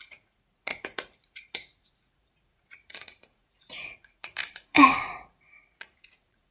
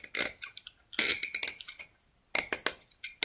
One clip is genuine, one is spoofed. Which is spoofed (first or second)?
first